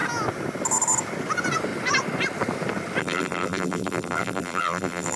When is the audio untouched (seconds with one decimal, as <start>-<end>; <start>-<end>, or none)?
0.0-3.0